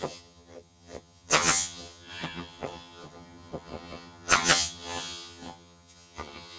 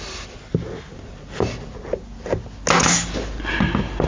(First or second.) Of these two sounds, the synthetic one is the first